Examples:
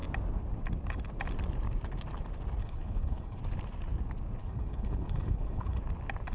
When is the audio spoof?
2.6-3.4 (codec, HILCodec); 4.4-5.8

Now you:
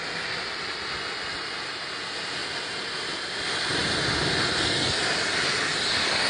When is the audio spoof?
none

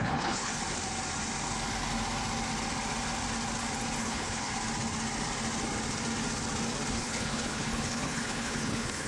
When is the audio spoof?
0.0-0.6 (codec, HILCodec); 4.0-4.5; 6.9-9.1

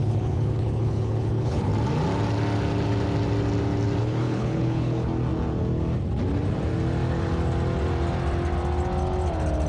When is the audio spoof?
0.0-1.7 (codec, HILCodec); 4.0-5.1

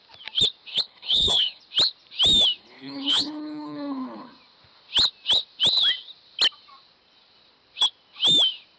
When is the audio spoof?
0.7-1.6 (codec, HILCodec); 2.6-4.3

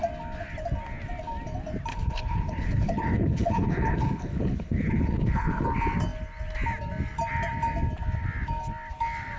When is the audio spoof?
1.9-5.6 (codec, HILCodec)